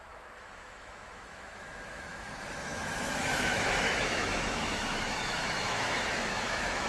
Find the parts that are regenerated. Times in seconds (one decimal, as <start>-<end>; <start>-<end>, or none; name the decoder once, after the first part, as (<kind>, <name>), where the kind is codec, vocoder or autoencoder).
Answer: 0.0-6.9 (autoencoder, DAC-VAE)